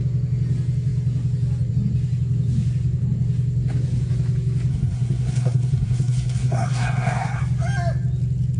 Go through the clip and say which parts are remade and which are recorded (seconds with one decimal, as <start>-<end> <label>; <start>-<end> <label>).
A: 0.0-4.7 recorded; 4.7-7.4 remade; 7.4-8.6 recorded